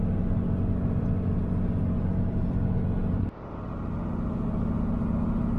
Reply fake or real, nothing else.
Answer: real